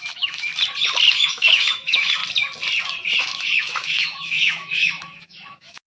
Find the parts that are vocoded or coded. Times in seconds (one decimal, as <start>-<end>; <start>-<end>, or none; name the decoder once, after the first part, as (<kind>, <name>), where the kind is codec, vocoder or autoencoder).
0.0-0.5 (autoencoder, DAC-VAE); 1.1-2.2; 3.2-5.9